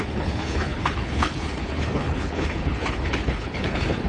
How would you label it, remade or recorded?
remade